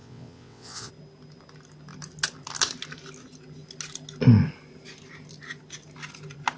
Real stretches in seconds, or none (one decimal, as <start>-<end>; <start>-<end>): 0.9-6.6